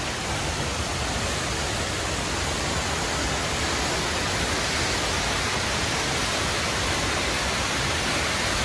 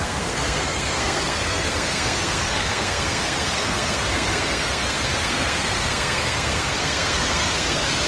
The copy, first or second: second